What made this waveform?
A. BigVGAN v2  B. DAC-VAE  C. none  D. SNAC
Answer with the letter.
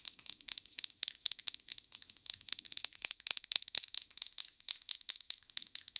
B